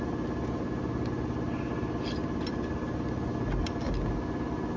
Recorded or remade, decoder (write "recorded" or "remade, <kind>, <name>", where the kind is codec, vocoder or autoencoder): recorded